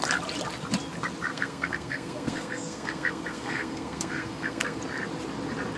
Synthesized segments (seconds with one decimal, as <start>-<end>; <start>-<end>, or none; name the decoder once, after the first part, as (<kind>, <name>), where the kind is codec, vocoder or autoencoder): 1.3-4.8 (codec, SNAC)